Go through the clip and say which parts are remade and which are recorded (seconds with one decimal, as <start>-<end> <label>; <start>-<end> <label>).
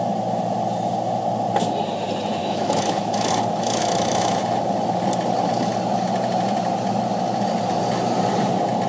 0.0-2.4 recorded; 2.4-3.3 remade; 3.3-3.8 recorded; 3.8-4.4 remade; 4.4-8.9 recorded